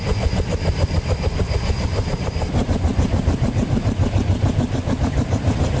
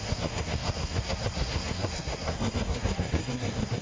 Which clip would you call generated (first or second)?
second